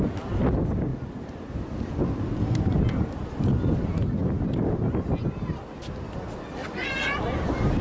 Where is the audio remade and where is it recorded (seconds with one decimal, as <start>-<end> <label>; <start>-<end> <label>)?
0.0-7.8 recorded